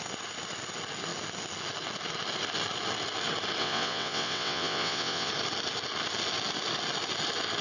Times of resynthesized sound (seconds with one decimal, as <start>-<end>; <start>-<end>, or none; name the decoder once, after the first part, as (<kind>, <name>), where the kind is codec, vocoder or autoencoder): 3.6-5.3 (vocoder, WaveNeXt)